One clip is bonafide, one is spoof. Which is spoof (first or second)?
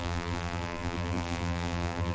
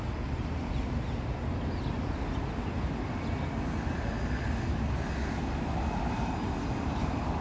first